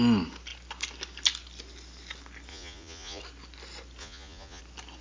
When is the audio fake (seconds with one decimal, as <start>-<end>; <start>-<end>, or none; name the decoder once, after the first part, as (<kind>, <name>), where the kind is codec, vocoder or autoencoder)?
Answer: 2.5-3.2 (vocoder, Vocos); 4.0-4.6

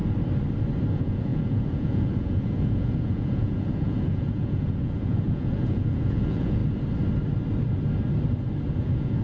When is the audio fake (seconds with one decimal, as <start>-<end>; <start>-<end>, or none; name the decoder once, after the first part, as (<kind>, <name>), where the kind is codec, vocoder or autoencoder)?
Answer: 0.9-6.6 (vocoder, Vocos); 8.7-9.2

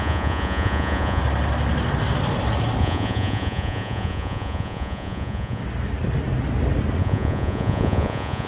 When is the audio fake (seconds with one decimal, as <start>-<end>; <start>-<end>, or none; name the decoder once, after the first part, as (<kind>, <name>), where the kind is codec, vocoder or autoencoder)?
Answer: 0.0-1.2 (vocoder, Vocos); 2.8-5.6; 7.0-8.5